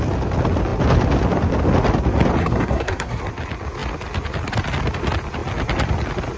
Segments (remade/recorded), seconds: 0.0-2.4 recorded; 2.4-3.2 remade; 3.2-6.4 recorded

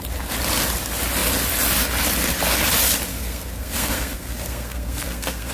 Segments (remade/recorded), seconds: 0.0-3.1 recorded; 3.1-5.5 remade

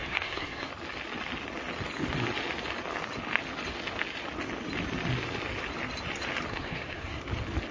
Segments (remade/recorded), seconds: 0.0-0.7 remade; 0.7-6.5 recorded; 6.5-7.2 remade; 7.2-7.7 recorded

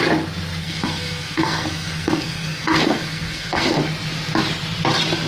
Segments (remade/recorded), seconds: 0.0-0.6 recorded; 0.6-3.8 remade; 3.8-5.3 recorded

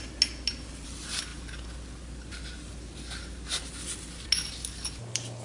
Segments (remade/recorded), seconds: 0.0-5.4 recorded

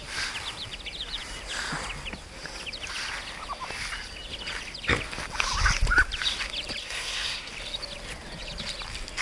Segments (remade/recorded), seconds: 0.0-6.8 recorded; 6.8-7.5 remade; 7.5-9.2 recorded

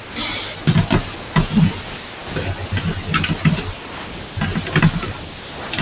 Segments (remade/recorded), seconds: 0.0-5.8 recorded

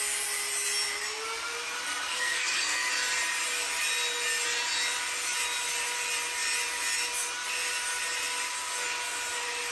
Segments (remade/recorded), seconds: 0.0-1.9 recorded; 1.9-2.9 remade; 2.9-9.7 recorded